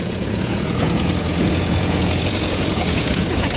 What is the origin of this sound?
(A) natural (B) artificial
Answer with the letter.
B